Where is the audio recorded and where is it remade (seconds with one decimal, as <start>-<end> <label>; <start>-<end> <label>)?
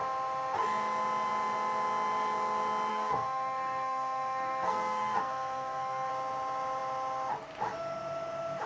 0.0-2.9 recorded; 2.9-6.1 remade; 6.1-8.7 recorded